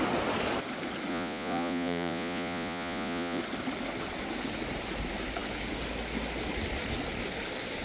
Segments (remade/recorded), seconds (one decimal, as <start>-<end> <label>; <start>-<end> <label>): 0.0-1.1 recorded; 1.1-3.4 remade; 3.4-7.8 recorded